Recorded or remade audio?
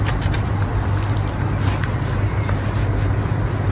recorded